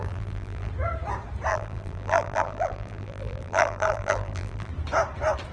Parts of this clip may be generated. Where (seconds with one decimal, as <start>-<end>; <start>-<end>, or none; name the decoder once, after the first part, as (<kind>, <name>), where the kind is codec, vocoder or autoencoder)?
0.0-0.7 (vocoder, BigVGAN v2); 1.5-4.7